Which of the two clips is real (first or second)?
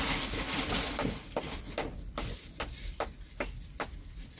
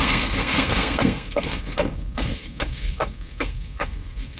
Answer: first